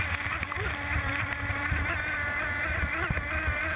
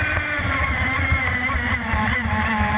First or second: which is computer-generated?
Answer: second